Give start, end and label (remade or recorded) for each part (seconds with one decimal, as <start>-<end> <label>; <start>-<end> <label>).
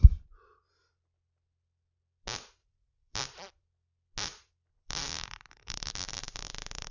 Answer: 0.0-2.6 recorded; 2.6-3.2 remade; 3.2-4.7 recorded; 4.7-6.9 remade